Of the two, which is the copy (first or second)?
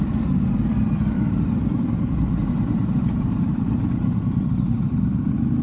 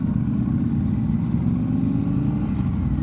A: first